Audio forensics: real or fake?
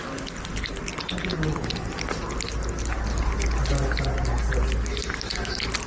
real